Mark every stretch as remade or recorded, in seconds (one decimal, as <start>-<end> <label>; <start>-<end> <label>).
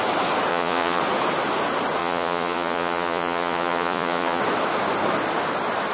0.0-0.5 recorded; 0.5-1.0 remade; 1.0-2.0 recorded; 2.0-4.4 remade; 4.4-5.9 recorded